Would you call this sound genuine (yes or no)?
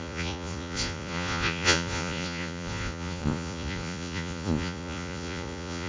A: no